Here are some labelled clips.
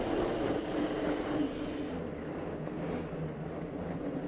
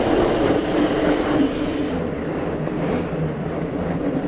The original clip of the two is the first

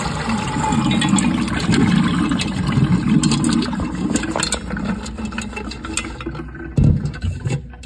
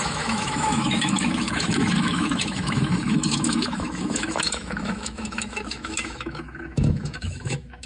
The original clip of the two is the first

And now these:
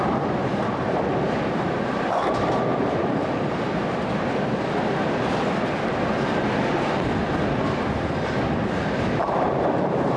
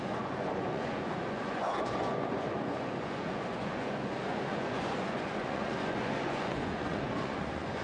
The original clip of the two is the first